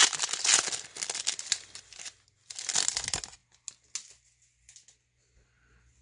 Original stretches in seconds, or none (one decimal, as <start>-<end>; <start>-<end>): 0.0-6.0